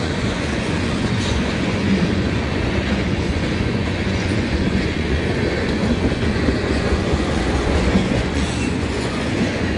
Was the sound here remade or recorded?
remade